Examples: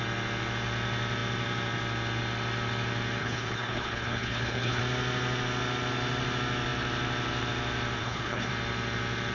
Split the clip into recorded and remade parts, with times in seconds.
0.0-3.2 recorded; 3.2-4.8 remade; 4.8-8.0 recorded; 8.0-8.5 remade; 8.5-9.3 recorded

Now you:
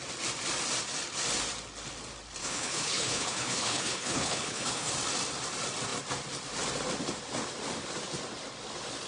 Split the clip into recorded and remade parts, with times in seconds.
0.0-2.4 recorded; 2.4-4.9 remade; 4.9-9.1 recorded